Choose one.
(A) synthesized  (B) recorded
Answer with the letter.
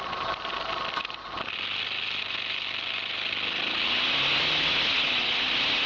B